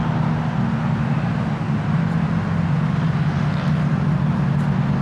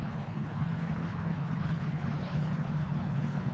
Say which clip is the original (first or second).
first